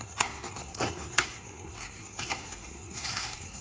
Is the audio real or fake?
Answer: fake